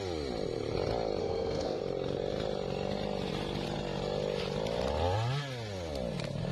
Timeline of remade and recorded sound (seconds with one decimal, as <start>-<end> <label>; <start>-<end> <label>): 0.0-1.2 recorded; 1.2-1.8 remade; 1.8-6.5 recorded